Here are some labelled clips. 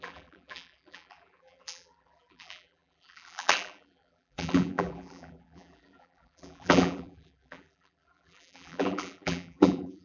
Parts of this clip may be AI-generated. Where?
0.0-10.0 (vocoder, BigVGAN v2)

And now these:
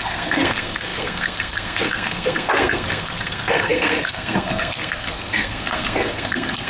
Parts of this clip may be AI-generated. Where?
0.0-6.7 (codec, SNAC)

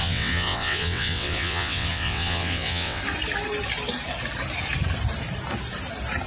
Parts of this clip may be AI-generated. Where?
0.0-3.0 (vocoder, WaveNeXt)

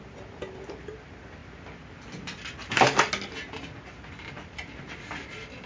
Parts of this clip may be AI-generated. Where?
none

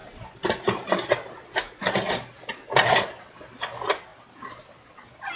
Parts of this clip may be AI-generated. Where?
4.1-4.7 (vocoder, BigVGAN v2)